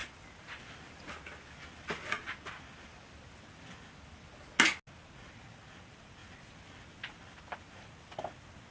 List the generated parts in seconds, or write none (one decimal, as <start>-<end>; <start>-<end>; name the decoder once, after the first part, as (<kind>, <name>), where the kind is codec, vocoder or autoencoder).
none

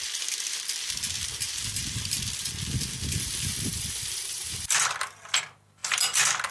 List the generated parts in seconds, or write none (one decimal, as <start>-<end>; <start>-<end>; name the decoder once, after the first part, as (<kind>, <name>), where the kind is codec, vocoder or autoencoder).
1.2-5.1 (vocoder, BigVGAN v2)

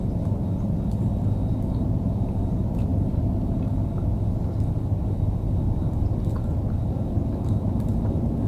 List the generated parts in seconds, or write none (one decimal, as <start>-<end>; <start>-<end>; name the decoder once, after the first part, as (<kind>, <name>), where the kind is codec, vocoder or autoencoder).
none